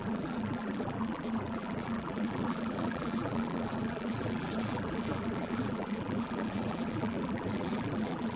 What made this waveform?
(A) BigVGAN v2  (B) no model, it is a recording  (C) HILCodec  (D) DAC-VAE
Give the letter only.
A